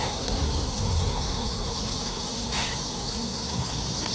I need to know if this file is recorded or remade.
remade